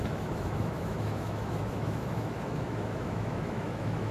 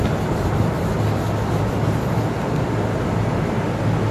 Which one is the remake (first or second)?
first